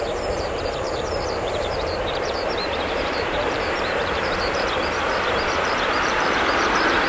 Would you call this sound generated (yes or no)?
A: yes